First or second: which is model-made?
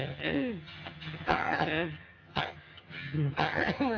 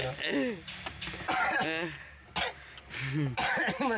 first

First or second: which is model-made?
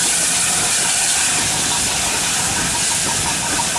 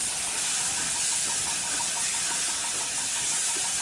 second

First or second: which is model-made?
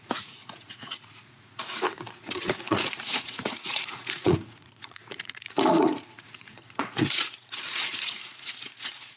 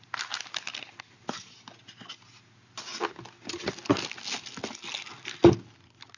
first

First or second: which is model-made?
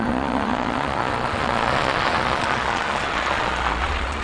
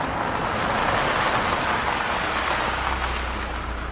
first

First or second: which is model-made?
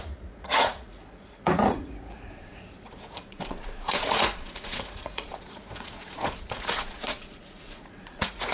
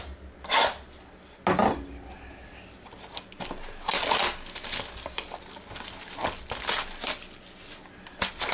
first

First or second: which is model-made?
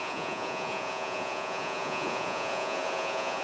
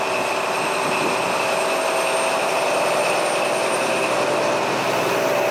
first